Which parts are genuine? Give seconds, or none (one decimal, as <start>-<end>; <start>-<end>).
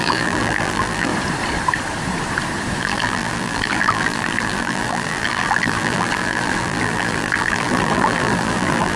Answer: 1.1-2.8